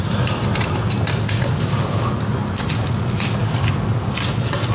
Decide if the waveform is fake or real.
real